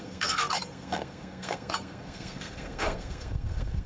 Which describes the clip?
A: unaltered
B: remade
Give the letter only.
B